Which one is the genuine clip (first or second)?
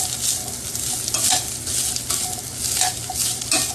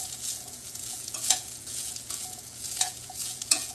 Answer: first